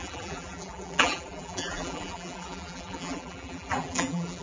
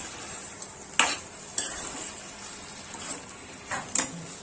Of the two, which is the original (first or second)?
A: second